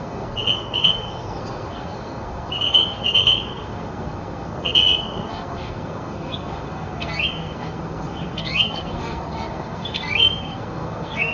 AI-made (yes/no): yes